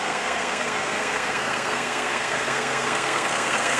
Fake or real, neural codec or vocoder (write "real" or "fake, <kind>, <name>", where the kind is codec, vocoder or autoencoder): fake, codec, SNAC